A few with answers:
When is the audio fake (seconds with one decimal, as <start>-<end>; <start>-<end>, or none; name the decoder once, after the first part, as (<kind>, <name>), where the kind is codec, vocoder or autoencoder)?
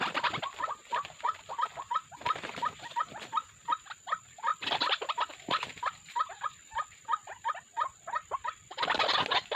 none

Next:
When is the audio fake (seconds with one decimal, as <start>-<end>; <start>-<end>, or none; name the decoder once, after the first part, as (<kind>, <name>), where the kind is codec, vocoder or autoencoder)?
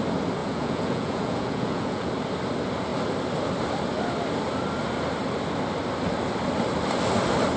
0.4-2.1 (vocoder, Vocos)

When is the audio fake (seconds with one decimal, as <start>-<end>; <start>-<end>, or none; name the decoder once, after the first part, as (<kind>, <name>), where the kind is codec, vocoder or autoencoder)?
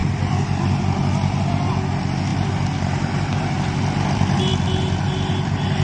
none